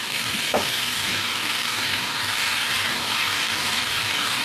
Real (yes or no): no